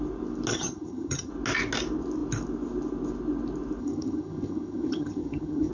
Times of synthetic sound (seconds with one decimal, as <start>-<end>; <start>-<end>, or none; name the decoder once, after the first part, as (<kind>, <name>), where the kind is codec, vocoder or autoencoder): 0.5-1.3 (vocoder, HiFi-GAN); 3.8-5.7